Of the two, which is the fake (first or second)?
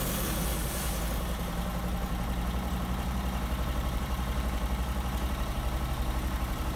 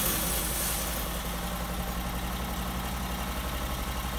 first